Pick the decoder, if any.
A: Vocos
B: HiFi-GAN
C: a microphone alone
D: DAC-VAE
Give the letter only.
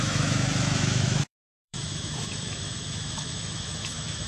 D